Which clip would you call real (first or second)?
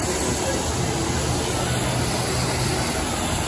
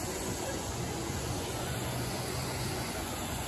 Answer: first